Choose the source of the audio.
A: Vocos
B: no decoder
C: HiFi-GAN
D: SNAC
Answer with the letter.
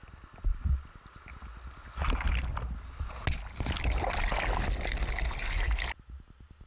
B